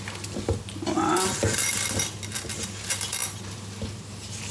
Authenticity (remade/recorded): recorded